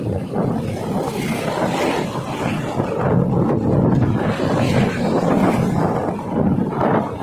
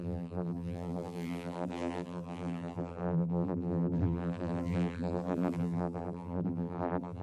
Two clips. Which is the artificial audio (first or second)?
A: second